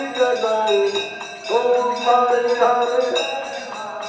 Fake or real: real